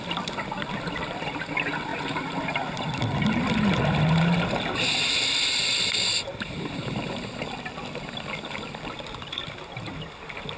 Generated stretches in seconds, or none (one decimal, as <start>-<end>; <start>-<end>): 1.9-2.5; 6.3-6.8